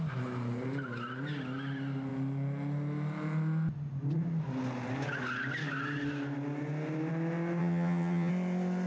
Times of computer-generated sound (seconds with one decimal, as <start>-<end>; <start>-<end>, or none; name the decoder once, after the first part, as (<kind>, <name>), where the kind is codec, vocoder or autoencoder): 7.6-8.3 (vocoder, HiFi-GAN)